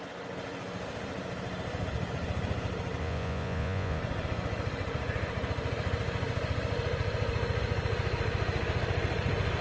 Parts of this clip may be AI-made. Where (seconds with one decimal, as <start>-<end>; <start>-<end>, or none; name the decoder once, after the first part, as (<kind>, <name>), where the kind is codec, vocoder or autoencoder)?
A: 3.0-4.0 (vocoder, Vocos)